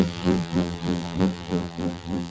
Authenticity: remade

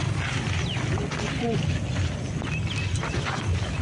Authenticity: recorded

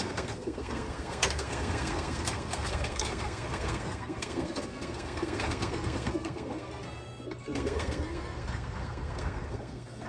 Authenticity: remade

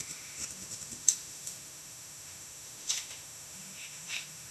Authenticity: remade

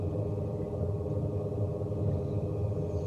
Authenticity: recorded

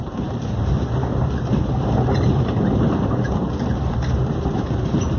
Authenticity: remade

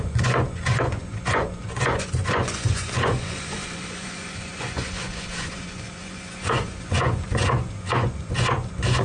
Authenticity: remade